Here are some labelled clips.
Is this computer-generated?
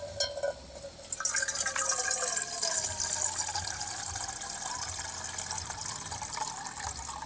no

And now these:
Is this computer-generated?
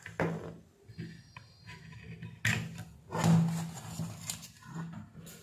no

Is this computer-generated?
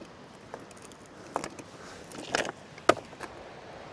no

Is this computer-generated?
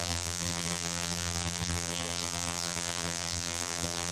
yes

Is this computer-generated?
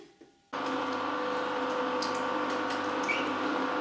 no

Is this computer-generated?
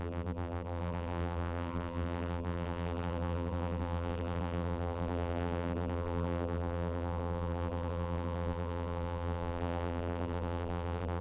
yes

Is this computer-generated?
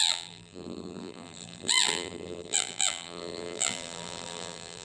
yes